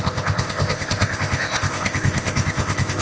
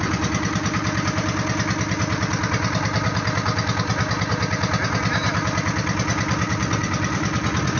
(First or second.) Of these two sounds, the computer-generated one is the first